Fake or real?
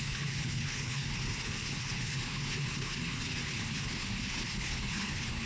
fake